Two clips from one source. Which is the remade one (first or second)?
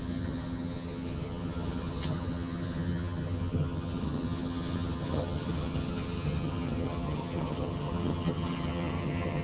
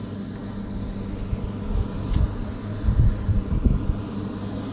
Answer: first